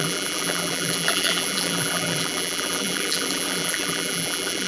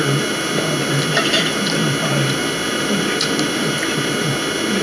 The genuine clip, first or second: second